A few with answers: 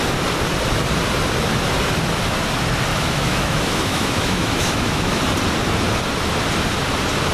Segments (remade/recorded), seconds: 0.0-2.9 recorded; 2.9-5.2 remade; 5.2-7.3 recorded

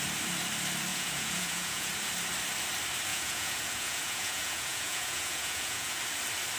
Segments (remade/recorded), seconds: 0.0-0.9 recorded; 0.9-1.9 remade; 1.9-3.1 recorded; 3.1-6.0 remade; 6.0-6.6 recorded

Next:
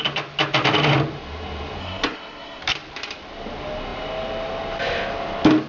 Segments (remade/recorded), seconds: 0.0-1.8 recorded; 1.8-2.6 remade; 2.6-5.7 recorded

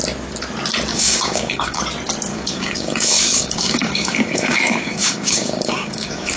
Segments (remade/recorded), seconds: 0.0-0.9 recorded; 0.9-1.8 remade; 1.8-2.3 recorded; 2.3-6.4 remade

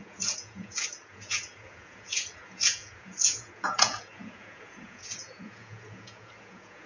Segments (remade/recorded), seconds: 0.0-6.9 remade

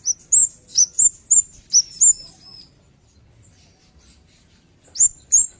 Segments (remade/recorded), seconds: 0.0-0.4 recorded; 0.4-1.0 remade; 1.0-2.5 recorded; 2.5-5.6 remade

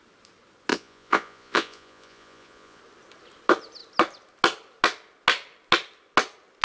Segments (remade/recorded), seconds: 0.0-0.7 recorded; 0.7-2.8 remade; 2.8-6.6 recorded